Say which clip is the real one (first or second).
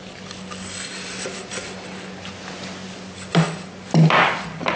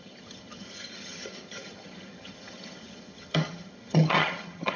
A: first